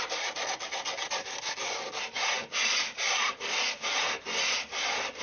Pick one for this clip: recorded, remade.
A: recorded